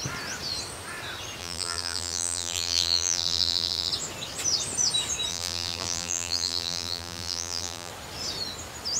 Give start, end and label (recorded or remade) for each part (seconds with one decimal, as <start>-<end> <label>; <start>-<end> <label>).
0.0-1.4 recorded; 1.4-3.9 remade; 3.9-5.3 recorded; 5.3-7.9 remade; 7.9-9.0 recorded